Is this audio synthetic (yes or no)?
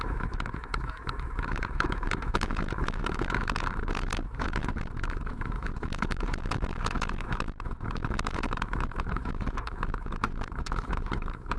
yes